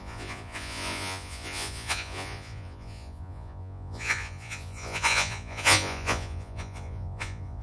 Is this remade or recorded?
remade